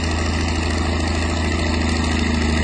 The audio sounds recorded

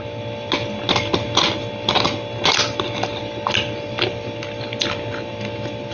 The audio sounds recorded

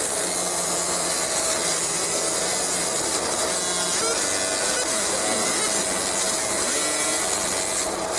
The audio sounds recorded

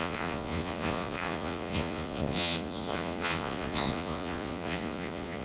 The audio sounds remade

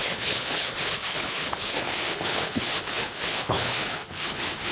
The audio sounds remade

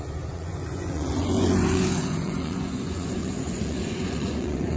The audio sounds remade